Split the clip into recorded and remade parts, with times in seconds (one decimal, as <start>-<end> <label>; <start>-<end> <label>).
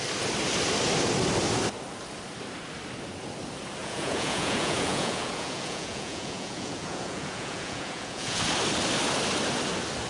0.0-3.8 recorded; 3.8-8.4 remade; 8.4-10.1 recorded